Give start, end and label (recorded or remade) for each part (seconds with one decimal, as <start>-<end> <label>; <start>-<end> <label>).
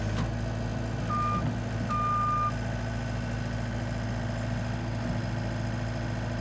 0.0-6.4 recorded